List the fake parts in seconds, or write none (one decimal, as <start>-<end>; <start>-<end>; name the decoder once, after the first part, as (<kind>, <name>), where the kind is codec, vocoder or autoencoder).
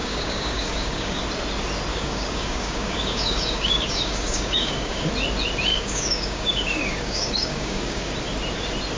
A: 0.0-1.2 (codec, DAC); 1.9-5.1; 5.7-8.1